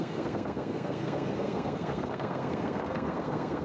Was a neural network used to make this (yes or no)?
yes